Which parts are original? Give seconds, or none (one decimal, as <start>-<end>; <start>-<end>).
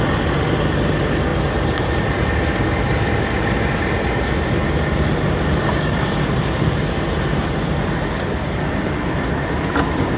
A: 0.0-10.2